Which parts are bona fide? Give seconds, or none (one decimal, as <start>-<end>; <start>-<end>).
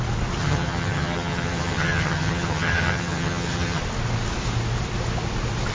0.0-0.4; 3.8-5.7